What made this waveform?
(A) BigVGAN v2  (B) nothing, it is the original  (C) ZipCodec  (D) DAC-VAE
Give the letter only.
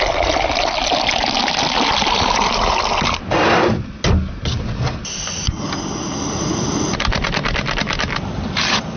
B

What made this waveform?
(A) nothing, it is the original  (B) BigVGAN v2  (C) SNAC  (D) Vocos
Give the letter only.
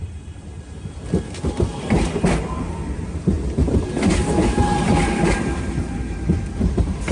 A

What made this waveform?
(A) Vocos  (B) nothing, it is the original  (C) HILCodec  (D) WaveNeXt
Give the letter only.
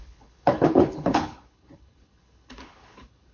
C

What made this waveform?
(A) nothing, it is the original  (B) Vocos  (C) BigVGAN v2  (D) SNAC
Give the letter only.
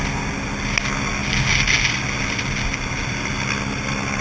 A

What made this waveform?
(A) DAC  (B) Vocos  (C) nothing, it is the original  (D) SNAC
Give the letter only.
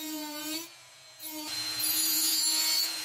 B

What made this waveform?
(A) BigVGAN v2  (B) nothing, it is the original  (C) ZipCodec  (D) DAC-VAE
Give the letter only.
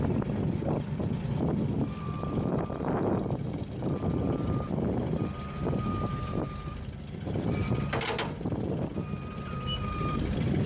A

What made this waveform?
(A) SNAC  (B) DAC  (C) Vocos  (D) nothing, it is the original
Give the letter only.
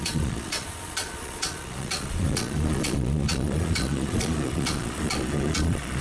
C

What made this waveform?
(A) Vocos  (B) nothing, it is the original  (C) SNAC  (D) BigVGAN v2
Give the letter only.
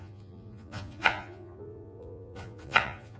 A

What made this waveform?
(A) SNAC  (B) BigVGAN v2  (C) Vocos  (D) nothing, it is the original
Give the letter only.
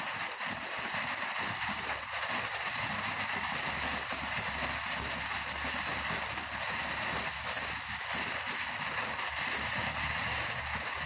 D